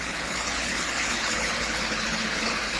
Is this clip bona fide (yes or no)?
no